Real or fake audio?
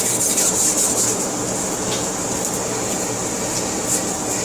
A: real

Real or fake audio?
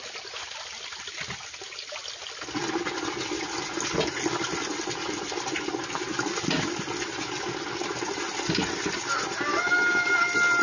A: real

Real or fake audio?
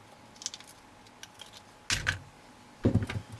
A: real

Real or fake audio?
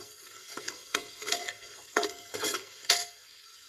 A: fake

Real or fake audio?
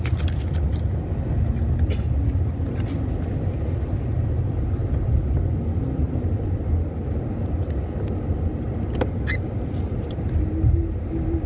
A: real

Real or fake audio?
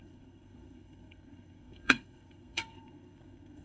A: fake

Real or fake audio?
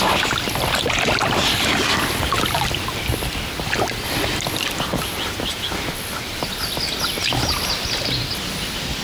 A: real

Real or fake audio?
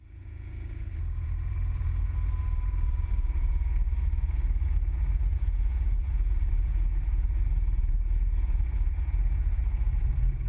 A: fake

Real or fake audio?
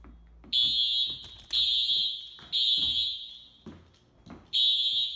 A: real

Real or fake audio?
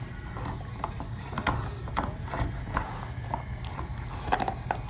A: real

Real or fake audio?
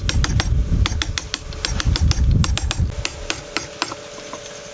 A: real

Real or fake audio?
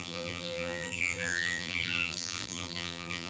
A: fake